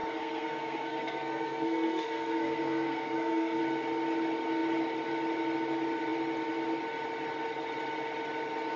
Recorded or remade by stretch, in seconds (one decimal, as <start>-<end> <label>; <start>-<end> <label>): 0.0-3.6 remade; 3.6-8.8 recorded